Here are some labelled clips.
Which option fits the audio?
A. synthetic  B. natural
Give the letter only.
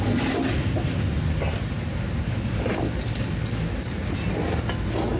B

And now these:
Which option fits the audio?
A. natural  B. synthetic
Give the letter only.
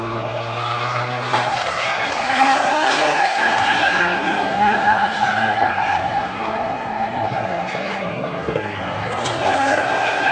B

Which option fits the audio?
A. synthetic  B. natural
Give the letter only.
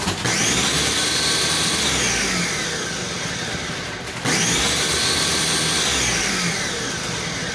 B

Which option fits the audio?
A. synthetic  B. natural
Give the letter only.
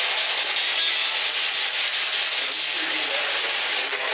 B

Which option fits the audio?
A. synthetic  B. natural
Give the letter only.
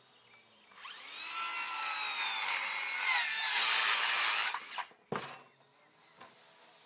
B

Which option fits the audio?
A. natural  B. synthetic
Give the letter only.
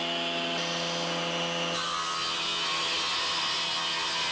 A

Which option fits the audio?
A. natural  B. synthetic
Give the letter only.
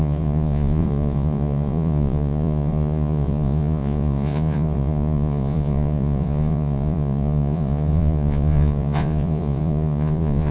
B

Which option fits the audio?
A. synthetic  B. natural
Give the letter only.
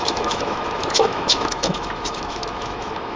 A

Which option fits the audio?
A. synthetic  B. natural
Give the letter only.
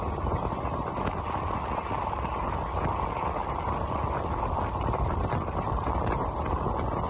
B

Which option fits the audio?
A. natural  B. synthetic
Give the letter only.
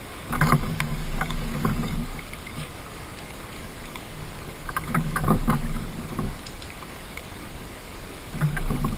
B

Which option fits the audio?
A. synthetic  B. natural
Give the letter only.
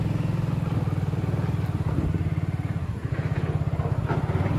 B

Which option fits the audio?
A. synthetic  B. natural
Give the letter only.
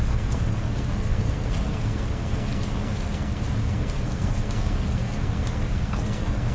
A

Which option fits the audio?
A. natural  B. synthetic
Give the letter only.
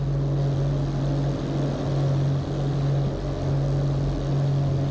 A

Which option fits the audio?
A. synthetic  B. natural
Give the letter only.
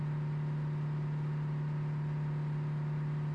B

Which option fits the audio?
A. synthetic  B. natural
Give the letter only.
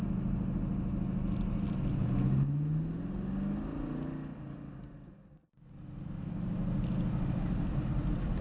B